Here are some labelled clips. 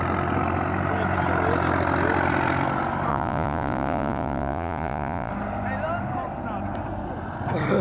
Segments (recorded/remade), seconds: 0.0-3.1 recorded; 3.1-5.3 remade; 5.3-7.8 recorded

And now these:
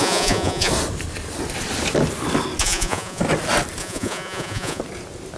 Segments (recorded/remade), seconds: 0.0-0.7 remade; 0.7-2.6 recorded; 2.6-3.2 remade; 3.2-3.8 recorded; 3.8-4.8 remade; 4.8-5.4 recorded

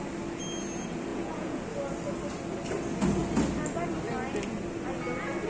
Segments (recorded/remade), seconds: 0.0-1.1 recorded; 1.1-1.6 remade; 1.6-5.5 recorded

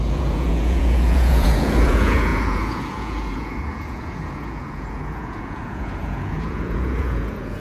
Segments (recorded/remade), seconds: 0.0-7.6 remade

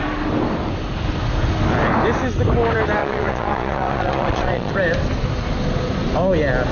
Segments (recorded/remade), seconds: 0.0-3.0 recorded; 3.0-4.7 remade; 4.7-6.7 recorded

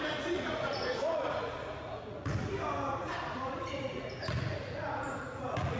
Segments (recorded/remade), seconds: 0.0-2.5 remade; 2.5-3.0 recorded; 3.0-5.8 remade